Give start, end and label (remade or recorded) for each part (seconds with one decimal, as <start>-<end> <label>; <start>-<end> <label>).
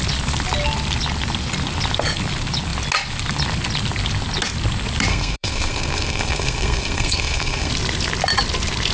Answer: 0.0-5.1 recorded; 5.1-7.7 remade; 7.7-8.9 recorded